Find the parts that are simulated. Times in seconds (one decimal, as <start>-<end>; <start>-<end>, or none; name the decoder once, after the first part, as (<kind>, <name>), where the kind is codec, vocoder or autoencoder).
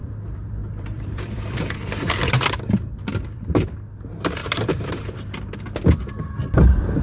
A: 0.0-3.4 (vocoder, BigVGAN v2); 4.4-5.1